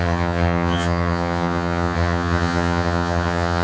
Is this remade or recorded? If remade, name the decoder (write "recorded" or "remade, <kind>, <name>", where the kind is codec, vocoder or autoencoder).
remade, vocoder, HiFi-GAN